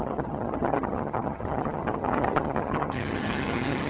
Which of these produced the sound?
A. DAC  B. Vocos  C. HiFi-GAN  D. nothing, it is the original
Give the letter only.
C